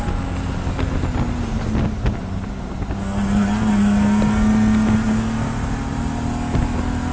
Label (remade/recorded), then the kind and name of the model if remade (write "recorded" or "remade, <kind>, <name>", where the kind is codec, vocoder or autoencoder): recorded